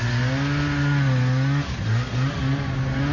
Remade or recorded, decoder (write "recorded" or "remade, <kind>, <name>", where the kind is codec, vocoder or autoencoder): recorded